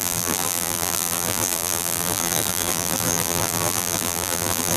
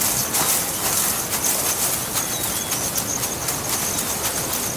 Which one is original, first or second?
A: second